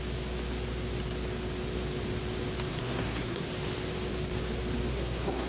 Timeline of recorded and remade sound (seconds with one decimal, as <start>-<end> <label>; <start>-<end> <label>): 0.0-2.7 recorded; 2.7-3.5 remade; 3.5-4.9 recorded; 4.9-5.5 remade